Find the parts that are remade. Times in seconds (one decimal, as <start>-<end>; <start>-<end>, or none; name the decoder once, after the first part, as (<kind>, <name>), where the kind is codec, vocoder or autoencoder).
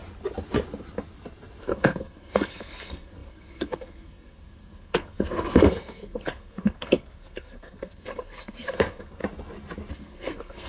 1.6-9.2 (codec, SNAC); 9.9-10.7